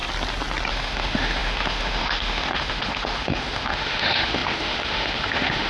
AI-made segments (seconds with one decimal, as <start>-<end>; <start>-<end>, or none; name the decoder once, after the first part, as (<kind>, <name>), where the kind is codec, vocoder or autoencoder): 0.7-5.7 (autoencoder, DAC-VAE)